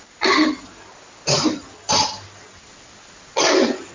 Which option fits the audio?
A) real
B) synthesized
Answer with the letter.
A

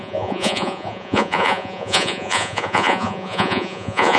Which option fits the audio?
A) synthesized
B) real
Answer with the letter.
A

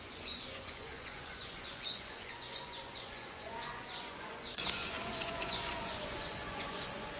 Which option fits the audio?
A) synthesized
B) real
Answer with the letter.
A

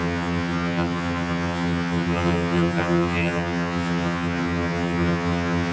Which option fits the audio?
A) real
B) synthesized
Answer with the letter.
B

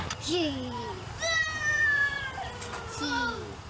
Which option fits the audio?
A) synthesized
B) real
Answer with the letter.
A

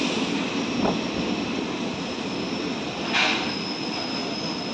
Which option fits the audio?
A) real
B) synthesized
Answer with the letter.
A